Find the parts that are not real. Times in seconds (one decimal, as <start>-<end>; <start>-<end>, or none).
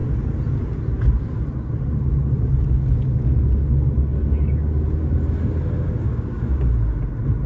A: 6.1-6.7